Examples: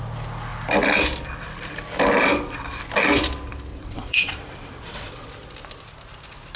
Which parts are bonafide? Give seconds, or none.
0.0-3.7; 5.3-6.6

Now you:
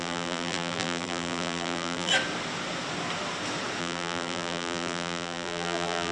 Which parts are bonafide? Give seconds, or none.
2.1-3.8